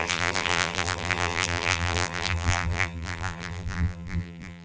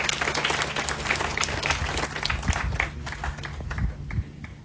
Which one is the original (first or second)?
second